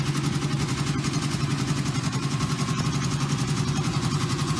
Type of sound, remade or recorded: remade